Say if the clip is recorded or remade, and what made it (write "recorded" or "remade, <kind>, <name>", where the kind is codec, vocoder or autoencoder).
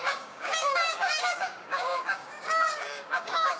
remade, codec, DAC